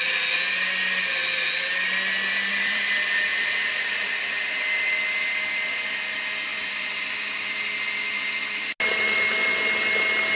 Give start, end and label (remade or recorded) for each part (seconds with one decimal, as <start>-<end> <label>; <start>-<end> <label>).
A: 0.0-2.5 recorded; 2.5-3.9 remade; 3.9-6.5 recorded; 6.5-7.4 remade; 7.4-10.4 recorded